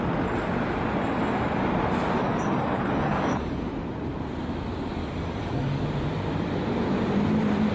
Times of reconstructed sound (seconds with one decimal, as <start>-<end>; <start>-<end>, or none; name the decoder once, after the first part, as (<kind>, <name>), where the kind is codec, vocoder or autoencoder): 2.2-3.7 (codec, DAC); 5.0-5.8